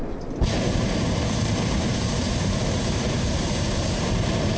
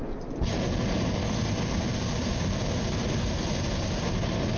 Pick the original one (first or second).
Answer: second